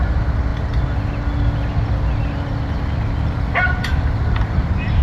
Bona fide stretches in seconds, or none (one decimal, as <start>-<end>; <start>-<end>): 0.0-5.0